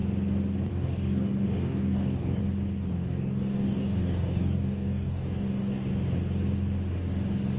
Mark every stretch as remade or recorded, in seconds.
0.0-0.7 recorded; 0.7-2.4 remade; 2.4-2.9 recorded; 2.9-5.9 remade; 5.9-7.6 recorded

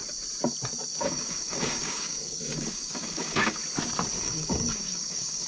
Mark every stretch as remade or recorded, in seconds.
0.0-1.0 recorded; 1.0-3.6 remade; 3.6-4.2 recorded; 4.2-5.5 remade